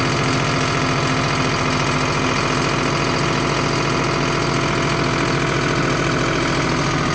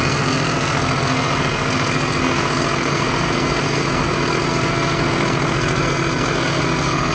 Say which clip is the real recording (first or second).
first